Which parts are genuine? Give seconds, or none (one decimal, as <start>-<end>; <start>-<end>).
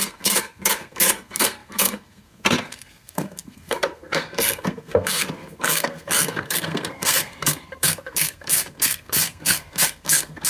none